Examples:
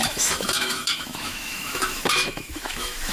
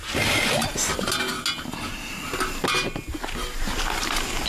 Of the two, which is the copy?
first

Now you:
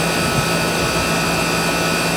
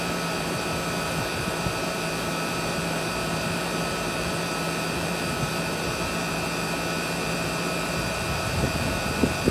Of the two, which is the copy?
second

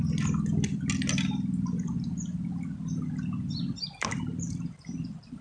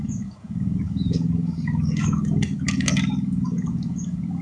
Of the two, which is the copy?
second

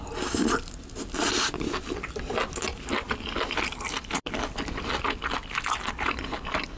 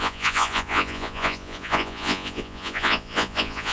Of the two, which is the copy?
second